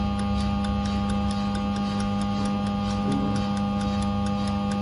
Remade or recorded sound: recorded